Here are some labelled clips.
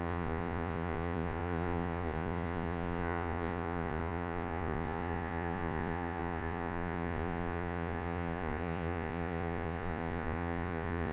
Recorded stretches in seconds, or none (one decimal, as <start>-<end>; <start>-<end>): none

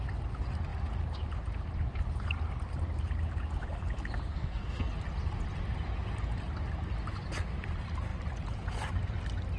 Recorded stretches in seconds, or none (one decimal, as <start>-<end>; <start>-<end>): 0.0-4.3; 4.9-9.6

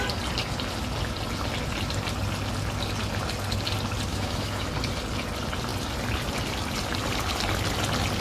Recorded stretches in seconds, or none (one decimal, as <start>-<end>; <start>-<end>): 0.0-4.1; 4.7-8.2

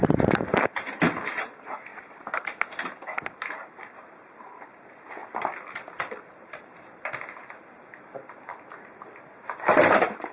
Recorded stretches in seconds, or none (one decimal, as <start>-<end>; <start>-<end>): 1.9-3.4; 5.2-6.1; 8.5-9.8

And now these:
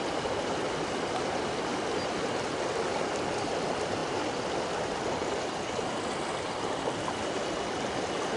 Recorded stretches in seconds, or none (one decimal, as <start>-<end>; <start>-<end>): 0.0-8.4

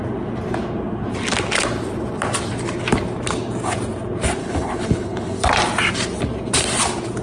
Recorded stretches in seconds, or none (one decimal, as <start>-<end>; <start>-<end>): 0.0-4.4; 5.4-7.2